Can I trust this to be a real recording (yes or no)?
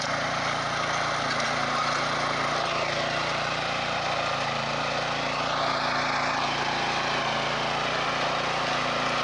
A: yes